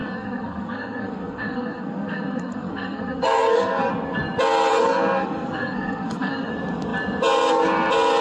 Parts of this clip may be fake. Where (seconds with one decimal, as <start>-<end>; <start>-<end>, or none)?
0.0-3.9; 4.7-6.5